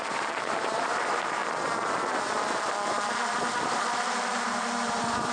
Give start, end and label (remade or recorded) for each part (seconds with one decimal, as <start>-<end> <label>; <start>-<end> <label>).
0.0-1.4 remade; 1.4-4.6 recorded; 4.6-5.3 remade